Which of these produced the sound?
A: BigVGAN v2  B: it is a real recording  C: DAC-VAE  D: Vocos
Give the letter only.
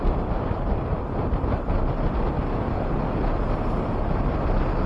B